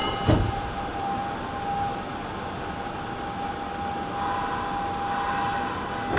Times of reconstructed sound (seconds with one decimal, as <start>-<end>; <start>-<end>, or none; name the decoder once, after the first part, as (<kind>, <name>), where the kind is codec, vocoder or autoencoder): 0.0-1.2 (vocoder, BigVGAN v2)